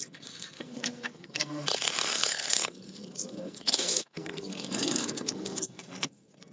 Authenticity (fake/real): fake